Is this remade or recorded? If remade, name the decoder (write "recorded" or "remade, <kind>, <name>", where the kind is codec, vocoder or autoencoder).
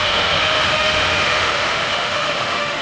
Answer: remade, autoencoder, DAC-VAE